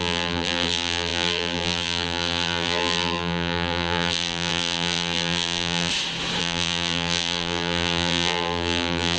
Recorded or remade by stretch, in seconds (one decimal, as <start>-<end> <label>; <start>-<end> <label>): 0.0-5.9 remade; 5.9-6.4 recorded; 6.4-9.2 remade